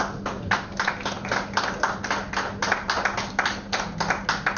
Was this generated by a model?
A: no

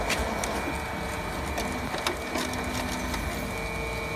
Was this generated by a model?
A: no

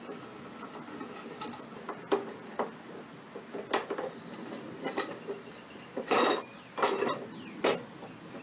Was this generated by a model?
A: no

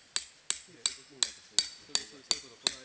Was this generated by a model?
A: no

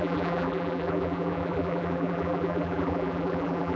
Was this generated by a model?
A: yes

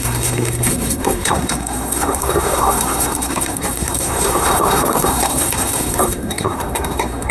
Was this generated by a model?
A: yes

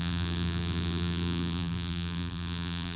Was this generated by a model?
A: yes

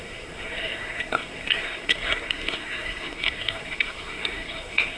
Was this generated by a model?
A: yes